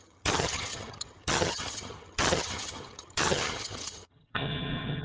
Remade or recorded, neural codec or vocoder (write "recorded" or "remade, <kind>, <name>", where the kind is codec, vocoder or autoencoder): remade, vocoder, HiFi-GAN